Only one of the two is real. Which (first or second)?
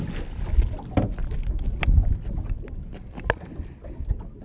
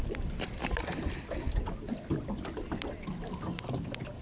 first